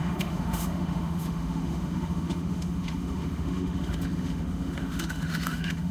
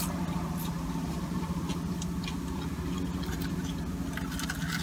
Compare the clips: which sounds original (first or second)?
second